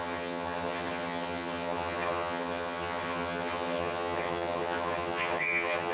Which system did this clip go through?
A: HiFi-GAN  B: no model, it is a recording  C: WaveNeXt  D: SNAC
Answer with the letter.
A